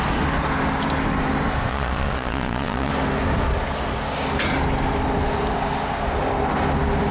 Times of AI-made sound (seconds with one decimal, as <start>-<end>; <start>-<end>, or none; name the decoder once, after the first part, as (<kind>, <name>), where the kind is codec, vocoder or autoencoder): 1.7-2.9 (vocoder, Vocos)